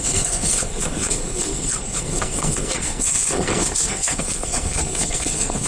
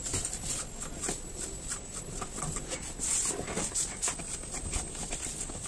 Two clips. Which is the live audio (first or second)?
second